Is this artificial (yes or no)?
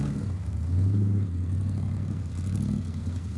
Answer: yes